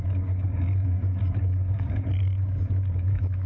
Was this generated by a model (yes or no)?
yes